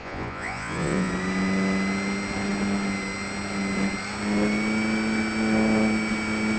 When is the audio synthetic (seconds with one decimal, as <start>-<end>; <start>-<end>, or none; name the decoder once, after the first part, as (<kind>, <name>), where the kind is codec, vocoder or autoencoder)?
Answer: 0.0-1.1 (vocoder, Vocos)